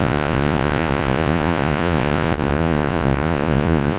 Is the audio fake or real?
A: fake